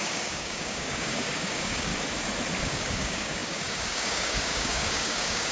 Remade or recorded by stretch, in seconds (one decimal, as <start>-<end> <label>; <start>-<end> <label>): 0.0-1.9 remade; 1.9-2.6 recorded; 2.6-5.5 remade